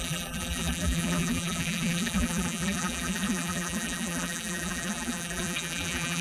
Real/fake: fake